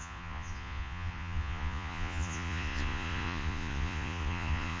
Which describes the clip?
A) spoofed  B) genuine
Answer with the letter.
A